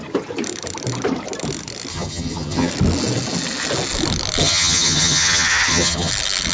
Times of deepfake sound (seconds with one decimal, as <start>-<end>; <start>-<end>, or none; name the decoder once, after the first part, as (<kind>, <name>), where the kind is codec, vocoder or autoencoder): 1.9-2.7 (vocoder, HiFi-GAN); 4.4-6.1